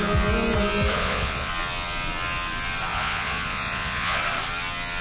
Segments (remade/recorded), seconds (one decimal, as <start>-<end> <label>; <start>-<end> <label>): 0.0-0.9 recorded; 0.9-1.5 remade; 1.5-2.9 recorded; 2.9-4.2 remade; 4.2-5.0 recorded

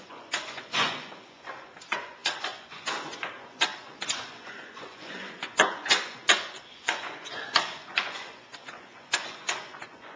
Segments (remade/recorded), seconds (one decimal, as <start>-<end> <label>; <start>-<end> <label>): 0.0-10.2 remade

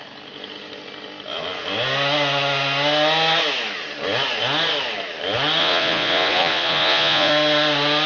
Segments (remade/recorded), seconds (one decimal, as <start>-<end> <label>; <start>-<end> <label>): 0.0-5.6 recorded; 5.6-7.3 remade; 7.3-8.1 recorded

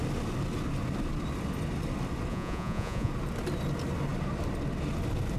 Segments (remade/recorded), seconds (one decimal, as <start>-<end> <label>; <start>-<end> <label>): 0.0-2.3 recorded; 2.3-3.1 remade; 3.1-5.4 recorded

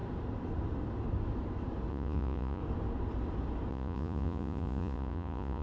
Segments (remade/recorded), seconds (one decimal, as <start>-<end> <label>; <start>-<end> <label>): 0.0-1.9 recorded; 1.9-2.6 remade; 2.6-3.7 recorded; 3.7-5.6 remade

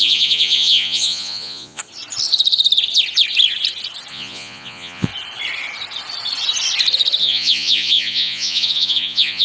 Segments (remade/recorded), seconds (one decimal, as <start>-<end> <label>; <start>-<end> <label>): 0.0-1.8 remade; 1.8-4.1 recorded; 4.1-5.1 remade; 5.1-7.2 recorded; 7.2-9.4 remade

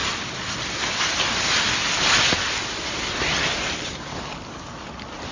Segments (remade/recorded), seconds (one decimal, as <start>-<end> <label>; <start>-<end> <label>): 0.0-5.3 recorded

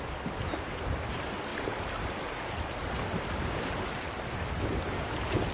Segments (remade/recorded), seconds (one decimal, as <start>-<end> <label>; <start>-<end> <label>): 0.0-5.5 recorded